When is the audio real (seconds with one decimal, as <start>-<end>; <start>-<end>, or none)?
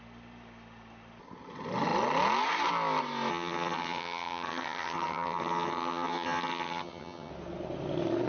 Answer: 0.0-3.3; 7.3-8.3